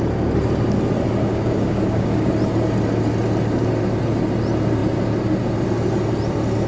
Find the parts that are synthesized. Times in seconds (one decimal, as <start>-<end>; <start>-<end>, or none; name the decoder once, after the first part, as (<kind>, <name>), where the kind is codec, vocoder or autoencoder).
1.3-2.3 (codec, DAC)